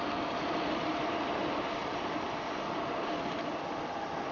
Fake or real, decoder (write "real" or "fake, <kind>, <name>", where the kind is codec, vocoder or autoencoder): real